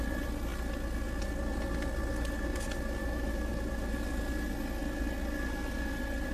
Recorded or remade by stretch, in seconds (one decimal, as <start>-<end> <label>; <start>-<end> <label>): 0.0-3.0 recorded; 3.0-3.5 remade; 3.5-6.3 recorded